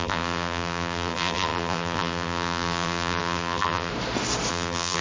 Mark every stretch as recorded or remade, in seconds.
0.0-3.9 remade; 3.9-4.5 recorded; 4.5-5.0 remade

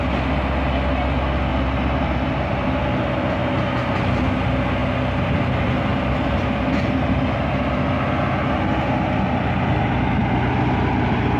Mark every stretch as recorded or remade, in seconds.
0.0-1.5 recorded; 1.5-3.0 remade; 3.0-4.8 recorded; 4.8-5.4 remade; 5.4-11.4 recorded

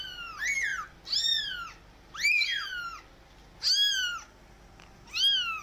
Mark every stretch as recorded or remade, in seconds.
0.0-5.6 recorded